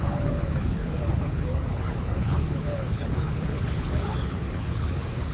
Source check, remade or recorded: remade